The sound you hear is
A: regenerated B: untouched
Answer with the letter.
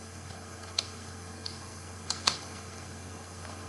A